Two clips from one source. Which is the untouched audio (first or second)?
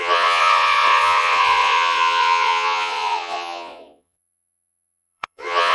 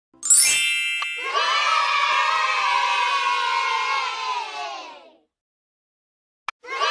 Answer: second